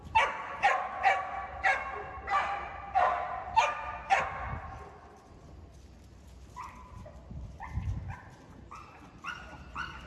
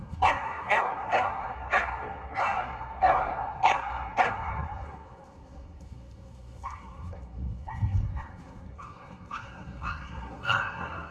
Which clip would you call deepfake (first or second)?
second